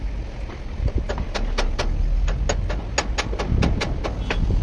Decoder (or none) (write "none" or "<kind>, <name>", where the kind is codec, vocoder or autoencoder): none